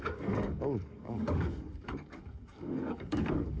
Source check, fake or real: fake